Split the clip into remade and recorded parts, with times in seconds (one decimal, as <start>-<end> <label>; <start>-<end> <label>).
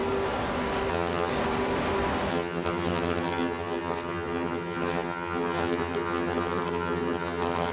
0.0-0.9 recorded; 0.9-1.3 remade; 1.3-2.3 recorded; 2.3-7.7 remade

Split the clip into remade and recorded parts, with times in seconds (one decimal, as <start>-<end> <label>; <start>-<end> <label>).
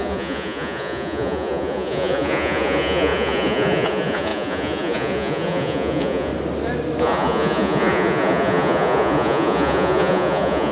0.0-6.3 remade; 6.3-7.0 recorded; 7.0-10.7 remade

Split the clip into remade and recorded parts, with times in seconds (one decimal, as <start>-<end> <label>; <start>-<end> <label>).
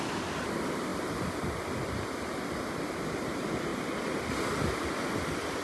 0.0-5.6 recorded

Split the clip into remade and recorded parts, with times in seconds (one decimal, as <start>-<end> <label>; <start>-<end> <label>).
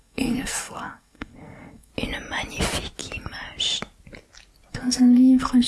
0.0-1.9 remade; 1.9-4.7 recorded; 4.7-5.7 remade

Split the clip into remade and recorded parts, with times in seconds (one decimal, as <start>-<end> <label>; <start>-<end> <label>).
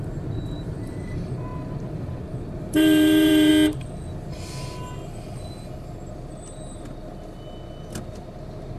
0.0-3.5 remade; 3.5-8.8 recorded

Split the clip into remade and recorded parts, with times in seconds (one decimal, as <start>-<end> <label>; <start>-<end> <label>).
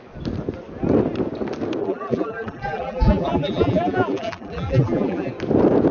0.0-1.8 recorded; 1.8-5.3 remade; 5.3-5.9 recorded